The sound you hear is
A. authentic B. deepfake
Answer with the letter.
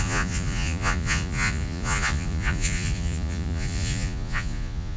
B